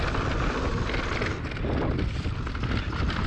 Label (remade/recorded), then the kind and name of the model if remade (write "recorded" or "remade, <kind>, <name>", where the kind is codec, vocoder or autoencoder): recorded